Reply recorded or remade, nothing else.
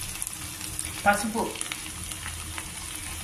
recorded